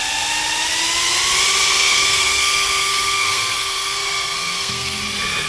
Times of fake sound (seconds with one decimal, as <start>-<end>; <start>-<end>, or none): 1.7-5.0